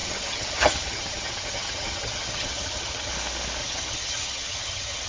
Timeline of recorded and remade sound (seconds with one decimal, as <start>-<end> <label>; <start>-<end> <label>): 0.0-3.1 remade; 3.1-3.6 recorded; 3.6-5.1 remade